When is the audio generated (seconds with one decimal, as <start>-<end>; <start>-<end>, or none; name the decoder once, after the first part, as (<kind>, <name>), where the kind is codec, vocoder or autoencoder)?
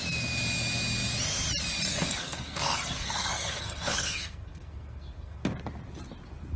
1.9-5.4 (codec, SNAC)